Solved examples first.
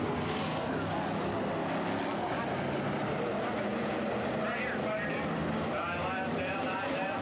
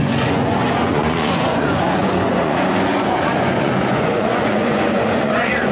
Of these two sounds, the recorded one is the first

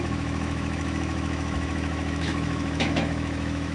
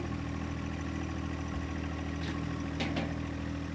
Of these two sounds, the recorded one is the second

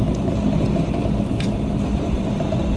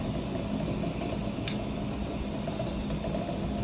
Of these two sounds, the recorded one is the second